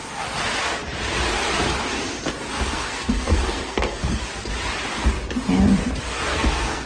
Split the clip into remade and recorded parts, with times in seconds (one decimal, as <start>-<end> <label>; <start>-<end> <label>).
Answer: 0.0-2.5 recorded; 2.5-4.2 remade; 4.2-6.3 recorded; 6.3-6.9 remade